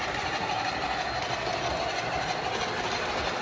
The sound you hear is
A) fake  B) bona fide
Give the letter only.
B